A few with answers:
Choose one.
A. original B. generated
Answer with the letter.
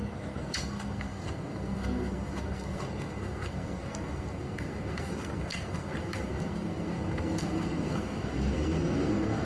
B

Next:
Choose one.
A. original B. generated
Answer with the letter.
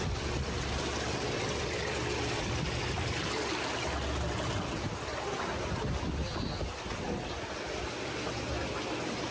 A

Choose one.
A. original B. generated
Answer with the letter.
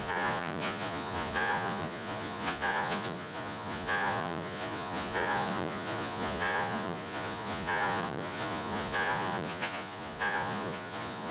B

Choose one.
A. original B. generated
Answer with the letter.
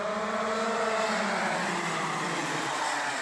A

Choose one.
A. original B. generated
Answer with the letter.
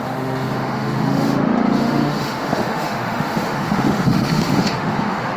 B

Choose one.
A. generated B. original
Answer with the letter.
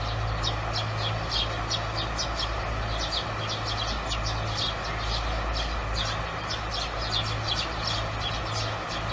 B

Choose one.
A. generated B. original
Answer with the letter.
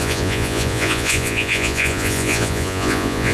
A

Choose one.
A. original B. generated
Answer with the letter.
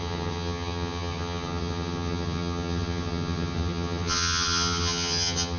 B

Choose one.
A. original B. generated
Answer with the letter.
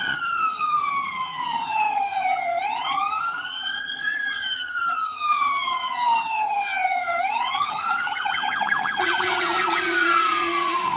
B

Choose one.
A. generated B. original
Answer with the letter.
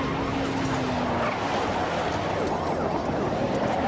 B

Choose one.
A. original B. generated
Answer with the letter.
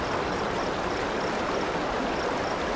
A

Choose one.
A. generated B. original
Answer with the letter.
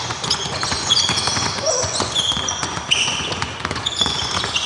A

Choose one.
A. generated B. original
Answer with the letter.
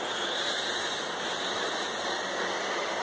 B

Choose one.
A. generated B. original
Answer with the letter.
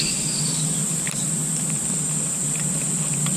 B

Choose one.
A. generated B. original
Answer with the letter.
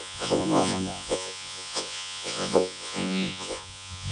A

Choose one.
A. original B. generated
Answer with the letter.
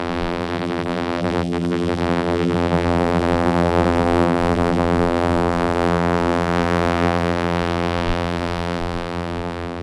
B